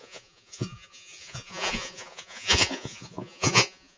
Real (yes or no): no